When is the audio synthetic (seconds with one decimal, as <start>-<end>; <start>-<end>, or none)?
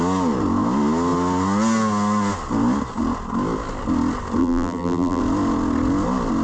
4.4-5.2